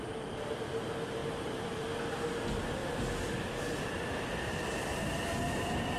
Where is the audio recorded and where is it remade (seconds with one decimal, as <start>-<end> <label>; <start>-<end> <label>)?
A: 0.0-6.0 recorded